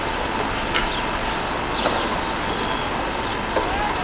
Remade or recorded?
recorded